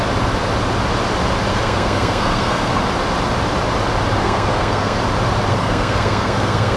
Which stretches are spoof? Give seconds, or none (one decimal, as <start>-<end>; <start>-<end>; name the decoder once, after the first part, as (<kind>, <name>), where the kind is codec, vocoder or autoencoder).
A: 1.5-2.8 (codec, SNAC); 4.2-5.0; 5.5-6.8